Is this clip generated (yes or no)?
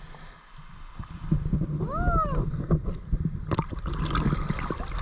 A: no